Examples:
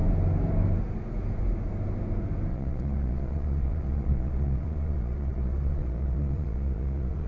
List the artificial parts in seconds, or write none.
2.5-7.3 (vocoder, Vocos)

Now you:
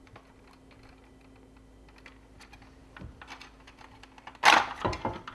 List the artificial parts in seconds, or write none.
none

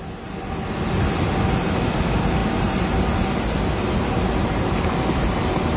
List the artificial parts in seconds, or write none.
none

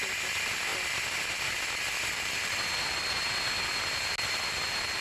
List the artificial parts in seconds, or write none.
none